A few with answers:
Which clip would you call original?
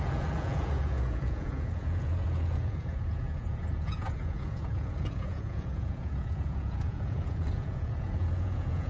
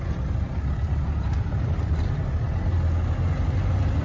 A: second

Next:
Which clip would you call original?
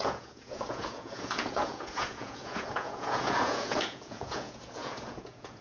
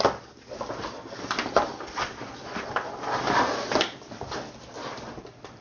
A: second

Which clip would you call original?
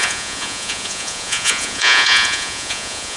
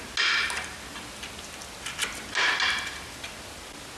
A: second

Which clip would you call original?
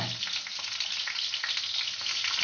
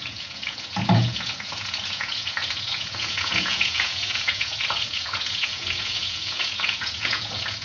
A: first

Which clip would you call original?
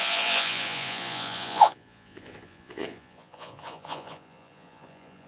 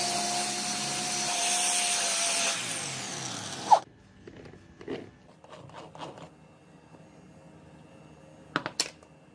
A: second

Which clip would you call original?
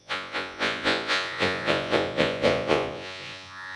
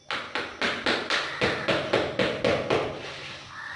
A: second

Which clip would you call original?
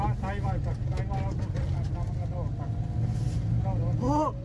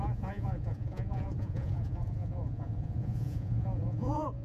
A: first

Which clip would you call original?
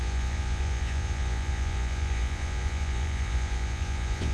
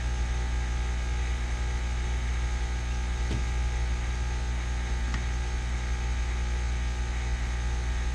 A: second